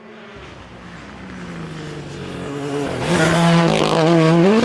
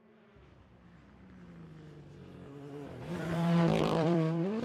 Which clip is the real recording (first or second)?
first